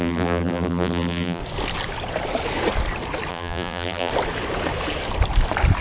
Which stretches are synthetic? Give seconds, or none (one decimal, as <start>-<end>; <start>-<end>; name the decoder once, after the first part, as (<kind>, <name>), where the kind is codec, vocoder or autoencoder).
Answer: 0.0-1.4 (vocoder, BigVGAN v2); 3.3-4.1